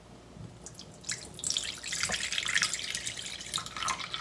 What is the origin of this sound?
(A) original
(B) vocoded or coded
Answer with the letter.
A